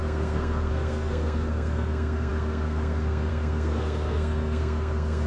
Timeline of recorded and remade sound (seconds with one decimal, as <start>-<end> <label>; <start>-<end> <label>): 0.0-5.3 remade